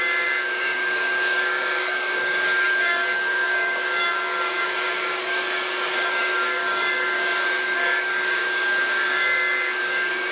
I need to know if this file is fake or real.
fake